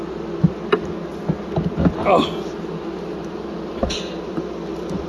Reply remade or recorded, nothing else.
recorded